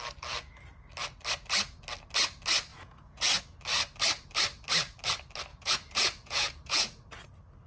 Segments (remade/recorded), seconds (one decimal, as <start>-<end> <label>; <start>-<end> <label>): 0.0-2.7 recorded; 2.7-3.4 remade; 3.4-5.5 recorded; 5.5-7.1 remade; 7.1-7.7 recorded